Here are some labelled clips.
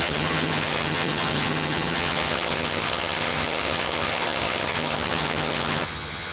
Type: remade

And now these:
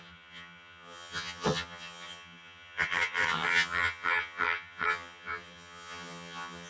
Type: remade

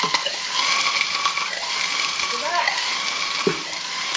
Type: recorded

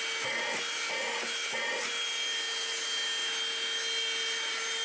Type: recorded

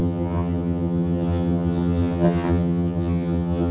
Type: remade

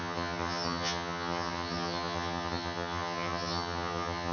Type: remade